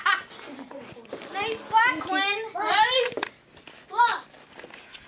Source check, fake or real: real